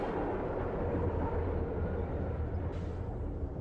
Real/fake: real